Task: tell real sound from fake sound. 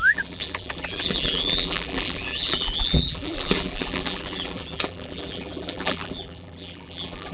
fake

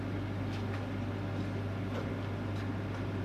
real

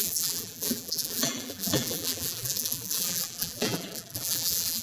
fake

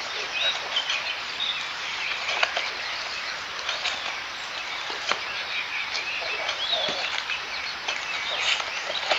fake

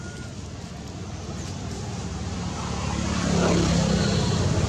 real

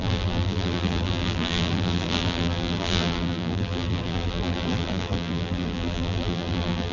fake